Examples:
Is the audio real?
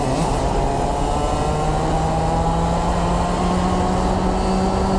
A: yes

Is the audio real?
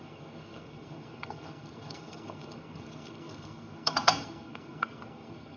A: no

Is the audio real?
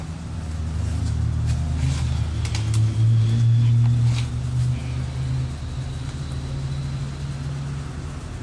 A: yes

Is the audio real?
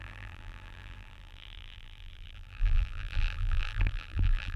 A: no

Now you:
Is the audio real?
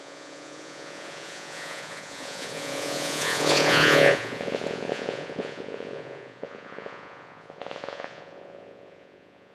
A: no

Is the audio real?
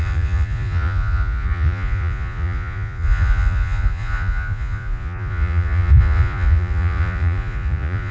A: no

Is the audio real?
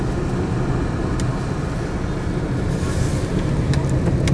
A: yes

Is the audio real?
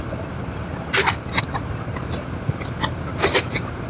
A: yes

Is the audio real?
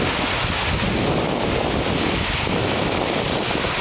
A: yes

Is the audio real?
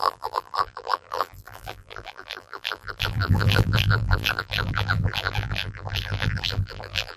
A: no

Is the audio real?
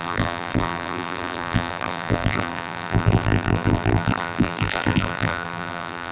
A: no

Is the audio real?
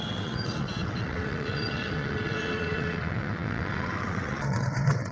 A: no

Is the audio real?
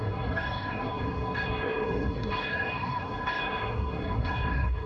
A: no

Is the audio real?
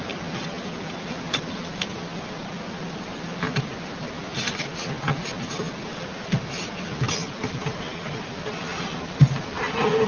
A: yes